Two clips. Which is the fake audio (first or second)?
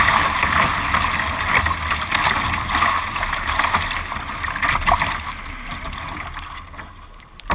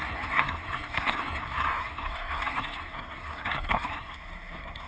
second